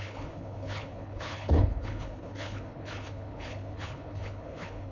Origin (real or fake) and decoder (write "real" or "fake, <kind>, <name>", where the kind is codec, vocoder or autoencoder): fake, codec, HILCodec